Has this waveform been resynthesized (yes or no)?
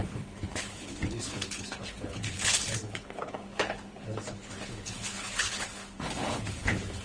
yes